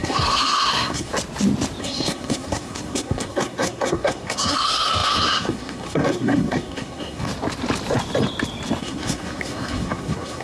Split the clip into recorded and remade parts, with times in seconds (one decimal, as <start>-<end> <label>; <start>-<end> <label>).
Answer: 0.0-1.1 remade; 1.1-1.8 recorded; 1.8-7.3 remade; 7.3-8.8 recorded; 8.8-10.4 remade